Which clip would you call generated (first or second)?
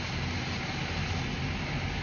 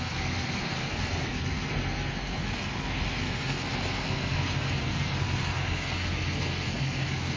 second